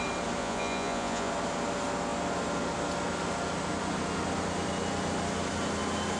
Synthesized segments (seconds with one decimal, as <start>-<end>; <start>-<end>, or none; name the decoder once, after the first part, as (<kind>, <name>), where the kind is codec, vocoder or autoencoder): 0.4-1.3 (vocoder, Vocos)